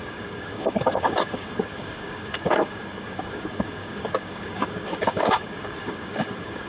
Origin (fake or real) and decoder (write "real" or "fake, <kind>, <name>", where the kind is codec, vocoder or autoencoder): fake, codec, DAC